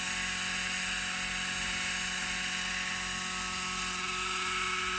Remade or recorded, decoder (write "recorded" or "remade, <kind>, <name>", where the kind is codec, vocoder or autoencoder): recorded